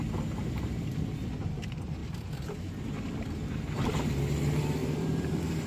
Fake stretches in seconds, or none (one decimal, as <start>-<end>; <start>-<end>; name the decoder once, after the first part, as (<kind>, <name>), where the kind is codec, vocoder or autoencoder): 2.0-3.9 (vocoder, BigVGAN v2); 4.8-5.7